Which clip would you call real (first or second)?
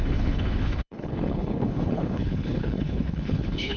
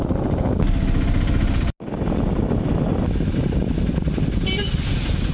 second